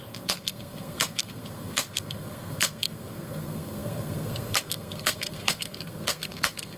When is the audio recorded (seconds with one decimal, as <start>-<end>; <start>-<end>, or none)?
none